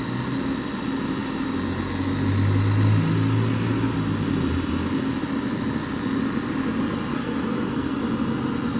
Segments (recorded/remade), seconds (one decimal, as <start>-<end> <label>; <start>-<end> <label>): 0.0-7.1 recorded; 7.1-8.0 remade; 8.0-8.8 recorded